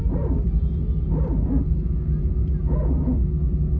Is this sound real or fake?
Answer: real